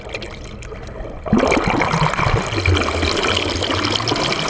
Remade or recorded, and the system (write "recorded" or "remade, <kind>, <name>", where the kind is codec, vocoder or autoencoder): recorded